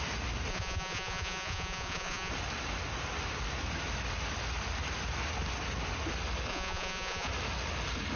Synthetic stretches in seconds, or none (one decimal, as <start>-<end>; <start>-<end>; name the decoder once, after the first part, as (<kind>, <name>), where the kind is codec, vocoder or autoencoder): 0.5-2.3 (vocoder, Vocos); 6.5-7.3

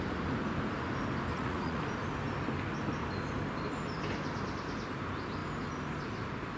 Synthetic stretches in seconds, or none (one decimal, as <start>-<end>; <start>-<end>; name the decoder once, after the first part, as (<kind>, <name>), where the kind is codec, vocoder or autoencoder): 1.3-1.8 (vocoder, Vocos)

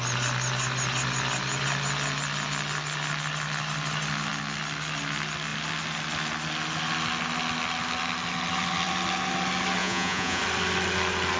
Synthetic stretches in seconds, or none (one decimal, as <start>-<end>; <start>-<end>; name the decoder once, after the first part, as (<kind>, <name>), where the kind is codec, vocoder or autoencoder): 9.8-10.4 (vocoder, Vocos)

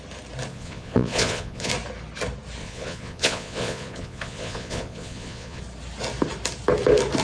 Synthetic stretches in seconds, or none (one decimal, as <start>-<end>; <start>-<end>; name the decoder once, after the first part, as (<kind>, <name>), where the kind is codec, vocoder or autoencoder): 0.5-1.7 (vocoder, Vocos); 2.6-5.6

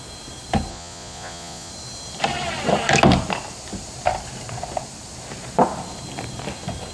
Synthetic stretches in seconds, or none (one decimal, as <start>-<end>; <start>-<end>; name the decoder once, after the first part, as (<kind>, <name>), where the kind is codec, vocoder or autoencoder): 0.7-1.7 (vocoder, Vocos)